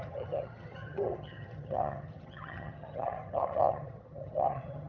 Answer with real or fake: fake